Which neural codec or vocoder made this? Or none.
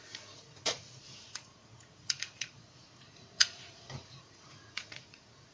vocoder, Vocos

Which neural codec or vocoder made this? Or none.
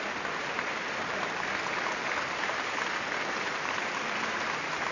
none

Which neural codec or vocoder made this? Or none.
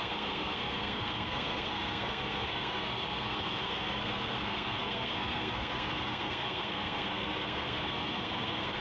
codec, SNAC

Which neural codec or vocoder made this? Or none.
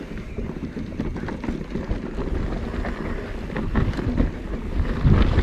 none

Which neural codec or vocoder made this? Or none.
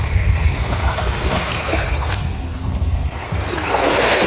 codec, SNAC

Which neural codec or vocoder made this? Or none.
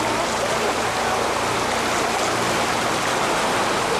none